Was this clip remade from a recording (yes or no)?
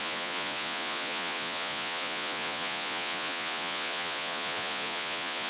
yes